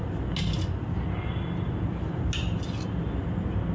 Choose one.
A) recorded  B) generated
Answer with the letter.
A